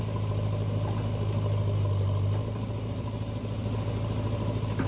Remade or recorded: recorded